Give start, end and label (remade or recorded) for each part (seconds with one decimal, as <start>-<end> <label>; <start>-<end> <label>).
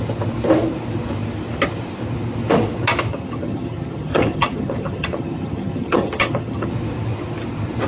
0.0-3.1 recorded; 3.1-6.7 remade; 6.7-7.9 recorded